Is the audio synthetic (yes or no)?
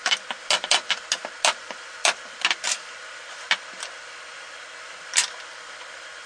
no